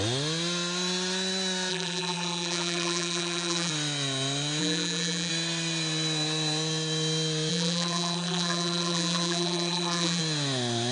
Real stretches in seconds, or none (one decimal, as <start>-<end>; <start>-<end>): 0.0-1.7; 3.7-4.6; 5.3-7.5; 10.2-10.9